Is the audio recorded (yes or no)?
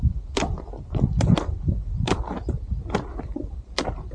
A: yes